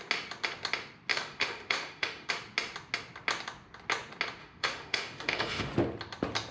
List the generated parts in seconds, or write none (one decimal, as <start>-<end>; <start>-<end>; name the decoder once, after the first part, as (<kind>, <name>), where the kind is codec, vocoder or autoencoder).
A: 1.1-2.3 (autoencoder, DAC-VAE); 4.4-5.7